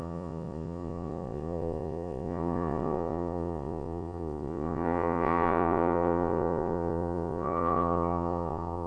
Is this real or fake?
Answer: fake